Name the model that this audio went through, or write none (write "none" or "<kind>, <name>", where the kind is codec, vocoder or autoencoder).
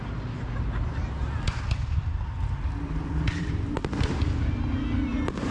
none